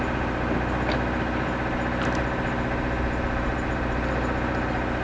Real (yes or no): yes